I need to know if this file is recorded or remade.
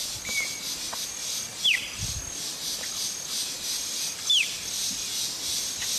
recorded